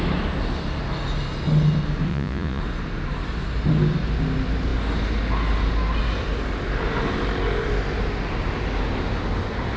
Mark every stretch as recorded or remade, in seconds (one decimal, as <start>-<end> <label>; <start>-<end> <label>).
0.0-2.1 recorded; 2.1-2.6 remade; 2.6-9.8 recorded